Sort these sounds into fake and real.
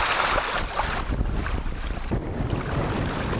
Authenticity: real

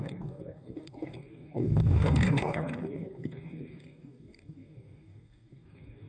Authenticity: fake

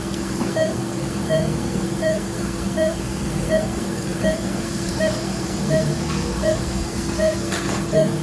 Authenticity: fake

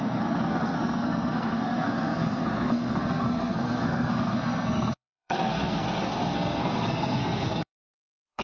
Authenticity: fake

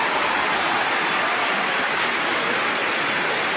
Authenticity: real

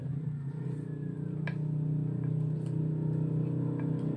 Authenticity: real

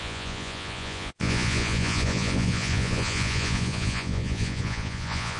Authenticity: fake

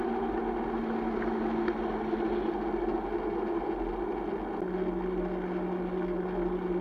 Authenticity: real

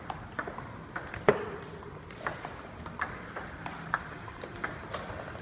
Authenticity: fake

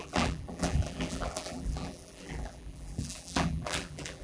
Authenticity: fake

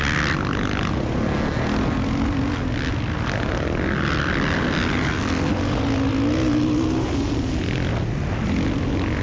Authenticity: real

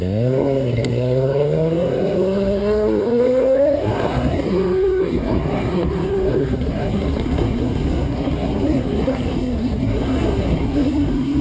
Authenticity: fake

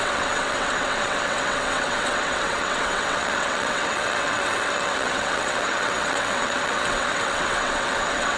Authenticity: fake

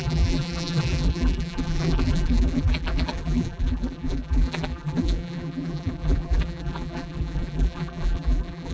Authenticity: fake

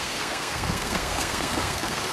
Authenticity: fake